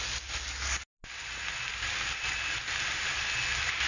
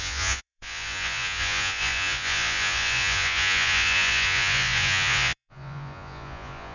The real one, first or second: first